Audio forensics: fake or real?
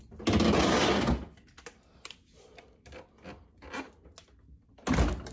real